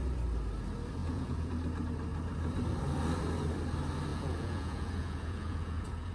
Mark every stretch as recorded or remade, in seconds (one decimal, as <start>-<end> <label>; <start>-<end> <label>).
0.0-1.0 recorded; 1.0-1.5 remade; 1.5-4.1 recorded; 4.1-6.1 remade